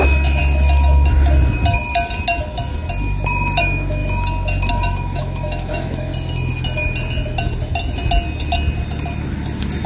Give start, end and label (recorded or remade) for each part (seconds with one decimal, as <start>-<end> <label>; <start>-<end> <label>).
0.0-0.4 remade; 0.4-3.6 recorded; 3.6-4.0 remade; 4.0-4.7 recorded; 4.7-6.1 remade; 6.1-9.9 recorded